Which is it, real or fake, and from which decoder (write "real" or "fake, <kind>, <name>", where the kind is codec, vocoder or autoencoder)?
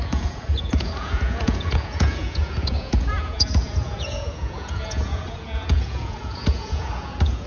fake, vocoder, Vocos